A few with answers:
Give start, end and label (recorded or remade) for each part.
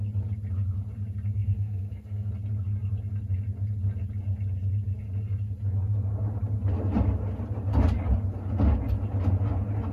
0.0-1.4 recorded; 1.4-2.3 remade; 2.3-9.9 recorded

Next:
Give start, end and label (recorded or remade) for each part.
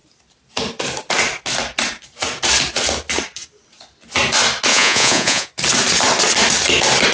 0.0-4.7 recorded; 4.7-5.5 remade; 5.5-7.1 recorded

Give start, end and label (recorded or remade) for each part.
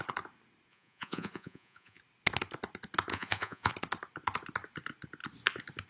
0.0-0.7 recorded; 0.7-2.0 remade; 2.0-3.1 recorded; 3.1-3.7 remade; 3.7-5.9 recorded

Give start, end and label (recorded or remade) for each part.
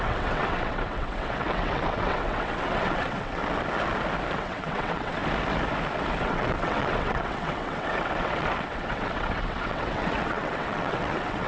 0.0-3.4 remade; 3.4-4.4 recorded; 4.4-5.2 remade; 5.2-6.2 recorded; 6.2-11.5 remade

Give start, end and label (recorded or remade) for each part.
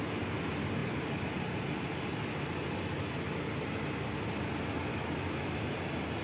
0.0-4.9 recorded; 4.9-5.6 remade; 5.6-6.2 recorded